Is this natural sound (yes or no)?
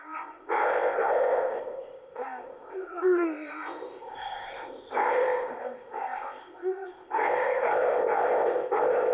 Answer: no